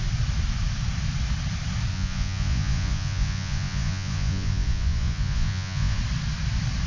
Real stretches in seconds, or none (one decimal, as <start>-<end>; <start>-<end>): 0.0-1.9; 6.0-6.9